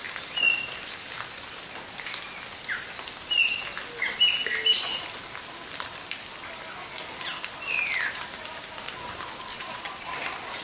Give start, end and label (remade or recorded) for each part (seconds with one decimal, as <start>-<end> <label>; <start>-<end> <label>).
0.0-9.5 recorded; 9.5-10.1 remade; 10.1-10.6 recorded